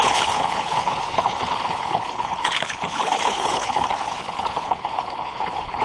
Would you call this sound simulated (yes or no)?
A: yes